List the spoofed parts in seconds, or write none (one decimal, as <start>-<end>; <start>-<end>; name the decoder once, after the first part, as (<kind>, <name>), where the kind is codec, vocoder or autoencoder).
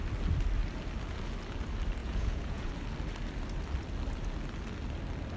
2.0-2.7 (vocoder, Vocos)